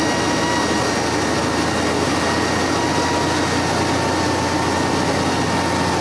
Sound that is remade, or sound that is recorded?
recorded